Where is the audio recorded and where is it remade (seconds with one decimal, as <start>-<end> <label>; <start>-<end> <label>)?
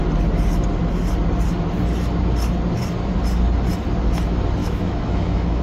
0.0-4.6 recorded; 4.6-5.6 remade